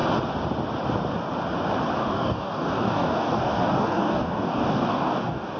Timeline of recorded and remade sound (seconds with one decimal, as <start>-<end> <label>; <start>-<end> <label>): 0.0-2.0 recorded; 2.0-5.6 remade